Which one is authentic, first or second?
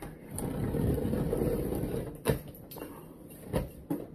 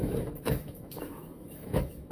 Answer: first